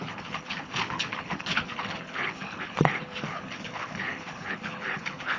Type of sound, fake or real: fake